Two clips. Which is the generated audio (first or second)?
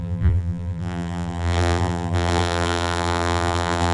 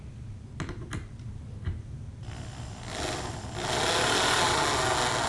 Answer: first